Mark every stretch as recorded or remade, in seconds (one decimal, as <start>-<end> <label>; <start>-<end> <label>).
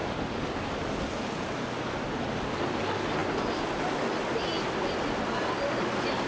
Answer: 0.0-0.9 remade; 0.9-6.3 recorded